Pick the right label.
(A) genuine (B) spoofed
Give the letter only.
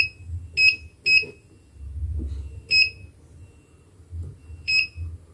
A